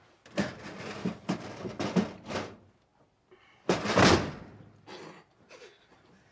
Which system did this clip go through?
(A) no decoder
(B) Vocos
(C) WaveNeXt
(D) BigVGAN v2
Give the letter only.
A